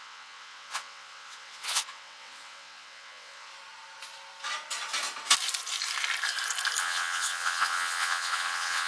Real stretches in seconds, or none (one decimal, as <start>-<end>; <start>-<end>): 3.5-6.8